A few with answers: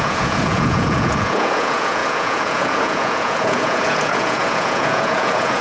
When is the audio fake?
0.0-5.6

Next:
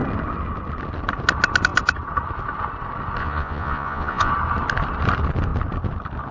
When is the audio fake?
3.2-4.3

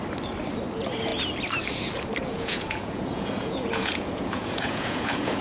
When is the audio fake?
2.2-5.4

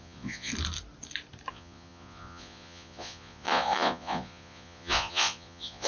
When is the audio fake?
0.0-0.5; 1.5-5.9

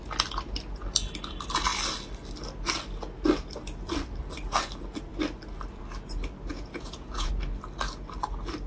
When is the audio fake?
6.5-7.3